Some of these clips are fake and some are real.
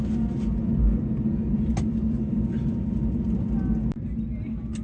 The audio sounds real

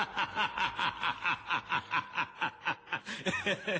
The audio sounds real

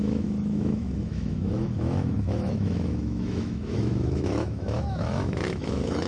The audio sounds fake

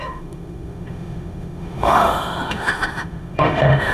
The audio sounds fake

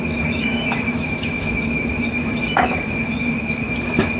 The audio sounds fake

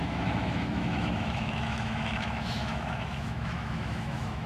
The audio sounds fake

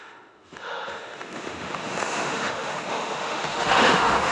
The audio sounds fake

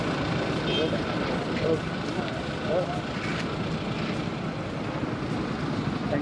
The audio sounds real